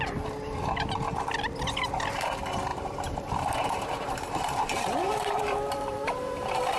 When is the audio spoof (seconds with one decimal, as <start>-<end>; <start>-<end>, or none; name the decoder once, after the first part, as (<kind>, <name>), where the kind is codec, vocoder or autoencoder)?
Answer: 2.7-6.8 (vocoder, BigVGAN v2)